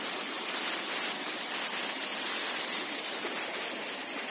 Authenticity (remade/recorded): recorded